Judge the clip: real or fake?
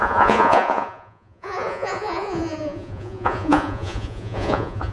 fake